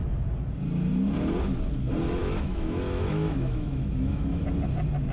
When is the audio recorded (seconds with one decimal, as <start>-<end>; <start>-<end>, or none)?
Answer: 0.0-2.2; 4.4-5.1